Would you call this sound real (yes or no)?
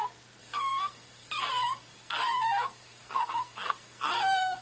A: no